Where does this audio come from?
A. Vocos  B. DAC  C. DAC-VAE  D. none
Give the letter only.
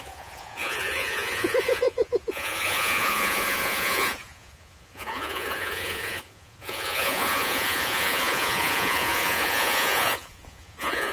A